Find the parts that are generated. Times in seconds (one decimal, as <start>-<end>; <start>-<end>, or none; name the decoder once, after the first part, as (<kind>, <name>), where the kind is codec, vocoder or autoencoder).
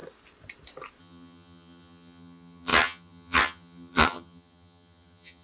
1.0-5.4 (vocoder, HiFi-GAN)